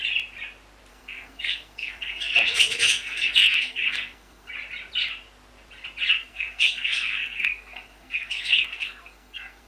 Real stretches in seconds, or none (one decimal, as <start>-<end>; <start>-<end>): 0.0-0.9; 4.5-6.1

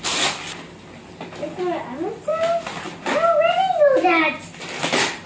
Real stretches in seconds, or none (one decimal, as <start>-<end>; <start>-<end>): 0.0-5.3

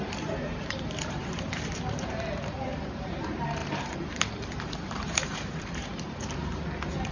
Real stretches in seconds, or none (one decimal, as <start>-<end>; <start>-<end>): none

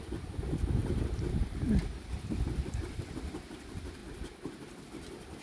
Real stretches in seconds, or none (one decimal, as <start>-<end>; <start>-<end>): 0.0-4.0; 4.8-5.4

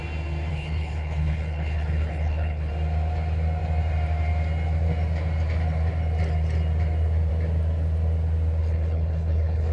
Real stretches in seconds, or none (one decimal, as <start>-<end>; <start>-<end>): 0.0-0.5; 2.7-8.6

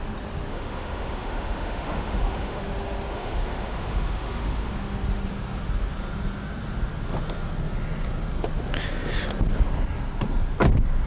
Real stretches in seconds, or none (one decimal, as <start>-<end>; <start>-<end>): 0.0-0.5; 2.6-3.1; 4.7-11.1

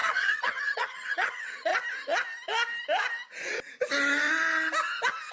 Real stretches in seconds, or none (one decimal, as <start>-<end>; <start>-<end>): 1.7-5.3